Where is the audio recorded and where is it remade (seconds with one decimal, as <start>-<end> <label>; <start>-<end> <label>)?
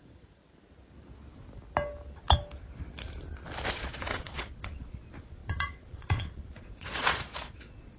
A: 0.0-0.4 remade; 0.4-3.7 recorded; 3.7-8.0 remade